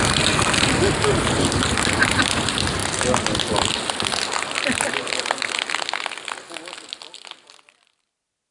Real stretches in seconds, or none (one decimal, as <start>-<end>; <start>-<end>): 0.0-8.5